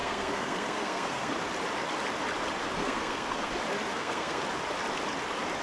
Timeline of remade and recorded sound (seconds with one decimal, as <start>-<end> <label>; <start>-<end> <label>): 0.0-1.3 remade; 1.3-2.8 recorded; 2.8-3.5 remade; 3.5-3.9 recorded; 3.9-4.4 remade; 4.4-5.6 recorded